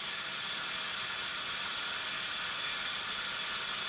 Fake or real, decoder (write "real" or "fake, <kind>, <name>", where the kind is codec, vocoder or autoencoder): real